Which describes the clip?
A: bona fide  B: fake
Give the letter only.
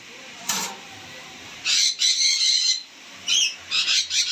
B